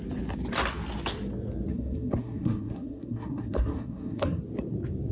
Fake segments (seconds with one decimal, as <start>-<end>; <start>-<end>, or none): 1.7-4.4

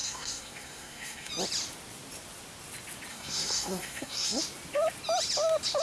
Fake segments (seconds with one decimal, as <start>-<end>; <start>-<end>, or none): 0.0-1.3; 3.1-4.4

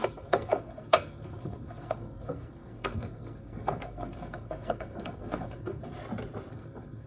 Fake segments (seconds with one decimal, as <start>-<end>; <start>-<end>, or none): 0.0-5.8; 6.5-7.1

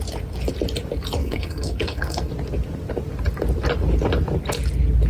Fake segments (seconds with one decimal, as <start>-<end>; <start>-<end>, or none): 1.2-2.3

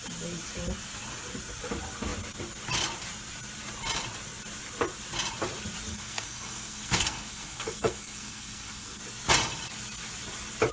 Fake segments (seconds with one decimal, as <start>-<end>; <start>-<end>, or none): 5.9-9.0

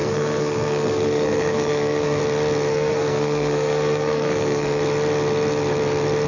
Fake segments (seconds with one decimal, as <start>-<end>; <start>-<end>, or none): 0.0-2.2; 2.7-4.8